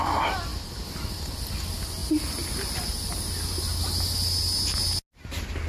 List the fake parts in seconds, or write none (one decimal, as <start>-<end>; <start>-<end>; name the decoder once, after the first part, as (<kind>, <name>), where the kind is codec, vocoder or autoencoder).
none